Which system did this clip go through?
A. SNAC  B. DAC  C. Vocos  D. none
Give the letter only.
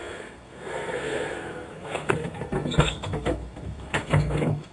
A